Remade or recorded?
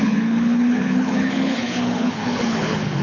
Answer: remade